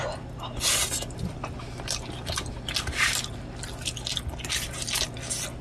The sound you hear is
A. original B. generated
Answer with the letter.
A